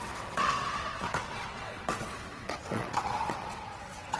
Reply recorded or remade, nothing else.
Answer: remade